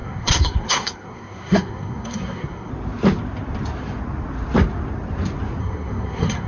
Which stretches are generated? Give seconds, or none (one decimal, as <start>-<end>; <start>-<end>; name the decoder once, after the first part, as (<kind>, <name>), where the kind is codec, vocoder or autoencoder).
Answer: 0.0-2.7 (codec, SNAC); 5.6-6.5